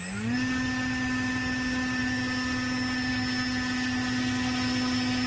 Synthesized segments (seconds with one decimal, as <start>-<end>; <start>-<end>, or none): none